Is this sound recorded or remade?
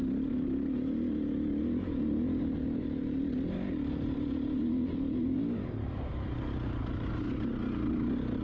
recorded